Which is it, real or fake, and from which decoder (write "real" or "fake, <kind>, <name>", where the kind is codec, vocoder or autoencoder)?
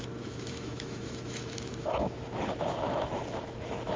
fake, autoencoder, DAC-VAE